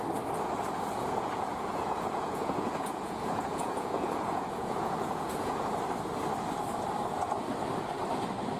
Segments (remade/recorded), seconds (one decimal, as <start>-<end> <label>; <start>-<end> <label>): 0.0-0.9 recorded; 0.9-5.7 remade; 5.7-8.6 recorded